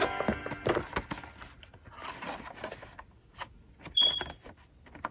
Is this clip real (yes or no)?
yes